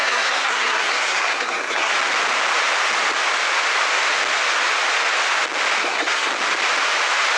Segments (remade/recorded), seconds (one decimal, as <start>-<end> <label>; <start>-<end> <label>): 0.0-1.9 remade; 1.9-5.8 recorded; 5.8-6.3 remade; 6.3-7.4 recorded